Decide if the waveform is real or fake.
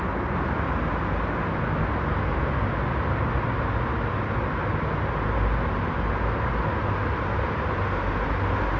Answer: real